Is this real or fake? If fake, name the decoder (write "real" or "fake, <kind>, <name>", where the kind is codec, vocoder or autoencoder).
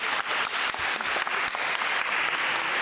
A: real